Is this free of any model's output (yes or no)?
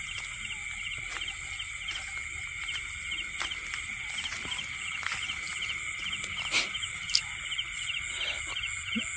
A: yes